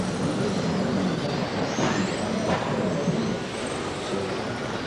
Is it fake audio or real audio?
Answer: real